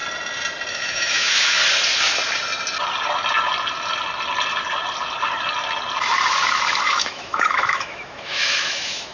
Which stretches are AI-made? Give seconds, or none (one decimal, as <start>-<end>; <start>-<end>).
0.7-1.6; 6.8-9.1